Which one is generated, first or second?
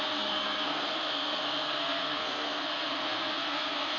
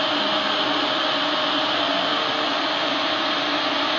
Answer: first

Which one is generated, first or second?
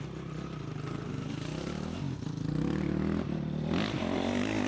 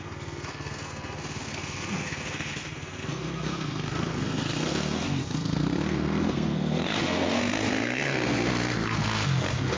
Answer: second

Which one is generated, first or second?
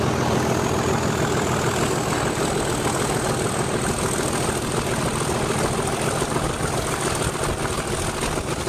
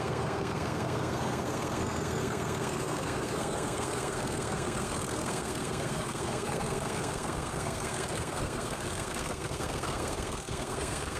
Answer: second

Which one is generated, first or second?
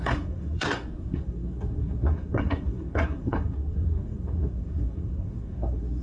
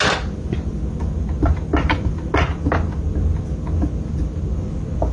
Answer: first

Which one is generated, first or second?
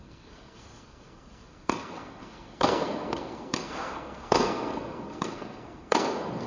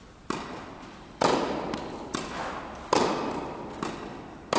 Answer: first